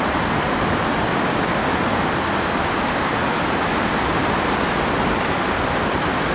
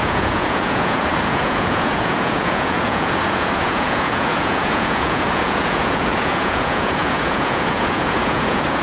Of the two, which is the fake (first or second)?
second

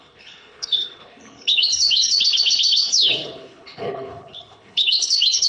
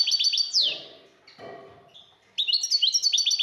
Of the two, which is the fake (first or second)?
first